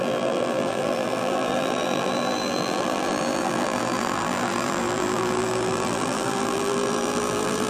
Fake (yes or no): yes